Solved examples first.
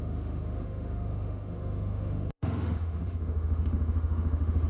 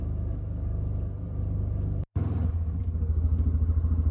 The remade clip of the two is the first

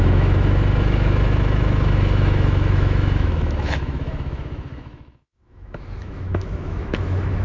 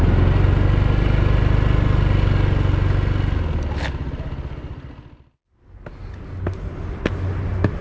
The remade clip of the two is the first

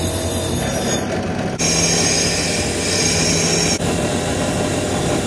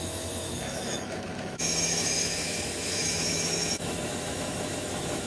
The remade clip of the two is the second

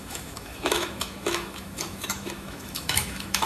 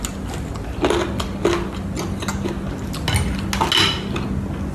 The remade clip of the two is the first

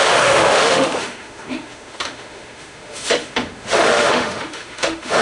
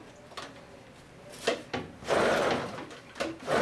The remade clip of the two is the first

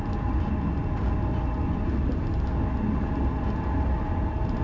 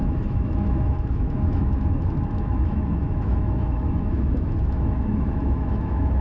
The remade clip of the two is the second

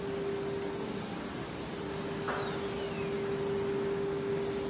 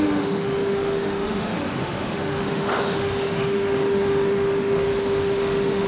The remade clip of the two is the second